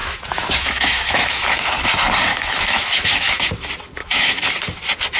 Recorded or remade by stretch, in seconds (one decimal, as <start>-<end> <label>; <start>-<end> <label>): 0.0-1.7 remade; 1.7-2.3 recorded; 2.3-3.5 remade; 3.5-4.0 recorded; 4.0-4.5 remade; 4.5-5.2 recorded